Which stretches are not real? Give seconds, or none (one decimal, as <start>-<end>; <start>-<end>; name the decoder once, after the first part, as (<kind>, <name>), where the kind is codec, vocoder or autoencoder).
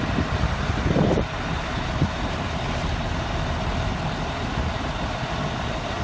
0.0-3.7 (vocoder, BigVGAN v2); 4.5-6.0